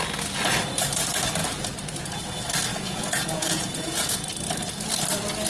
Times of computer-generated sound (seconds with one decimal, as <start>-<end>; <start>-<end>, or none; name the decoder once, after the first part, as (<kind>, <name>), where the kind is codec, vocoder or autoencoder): 2.7-4.2 (vocoder, Vocos)